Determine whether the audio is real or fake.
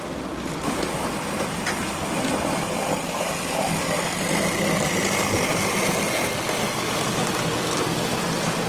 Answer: real